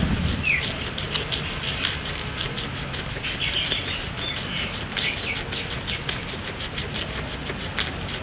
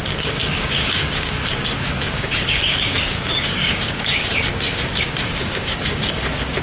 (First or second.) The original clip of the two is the first